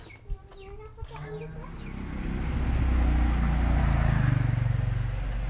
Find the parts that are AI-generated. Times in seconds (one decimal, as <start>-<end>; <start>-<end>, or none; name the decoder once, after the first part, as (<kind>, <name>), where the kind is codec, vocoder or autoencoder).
none